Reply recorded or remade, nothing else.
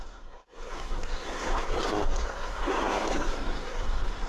remade